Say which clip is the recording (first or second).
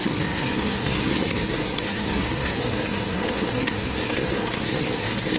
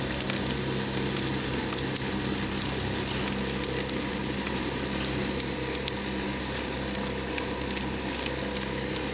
second